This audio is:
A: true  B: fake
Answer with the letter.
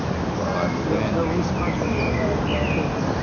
A